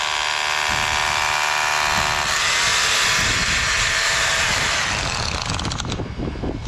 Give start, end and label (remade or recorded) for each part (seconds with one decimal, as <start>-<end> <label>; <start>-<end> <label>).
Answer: 0.0-2.7 recorded; 2.7-4.9 remade; 4.9-6.7 recorded